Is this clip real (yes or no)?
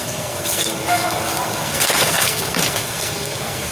no